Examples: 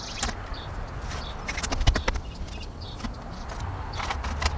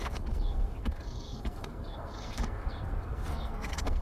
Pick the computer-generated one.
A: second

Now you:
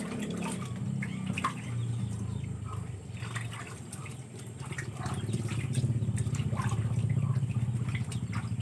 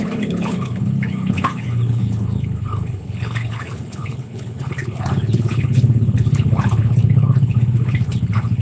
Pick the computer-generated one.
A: second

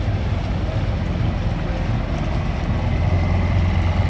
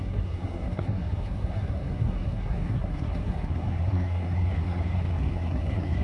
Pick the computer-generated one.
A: second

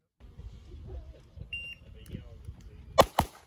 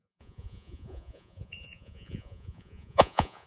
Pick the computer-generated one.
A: second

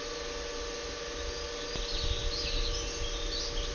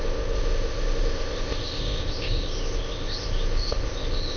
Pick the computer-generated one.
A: second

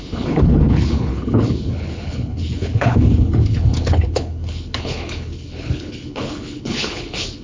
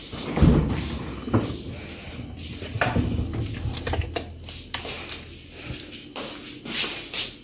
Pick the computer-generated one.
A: first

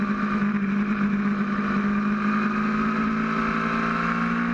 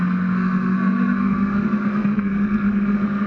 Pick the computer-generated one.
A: second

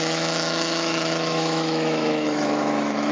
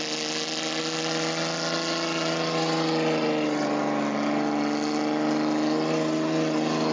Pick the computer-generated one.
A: first